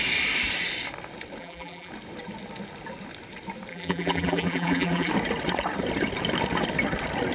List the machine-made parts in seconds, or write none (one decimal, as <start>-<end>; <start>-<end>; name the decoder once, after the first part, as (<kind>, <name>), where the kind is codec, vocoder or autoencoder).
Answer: 1.4-1.9 (vocoder, BigVGAN v2); 3.7-5.1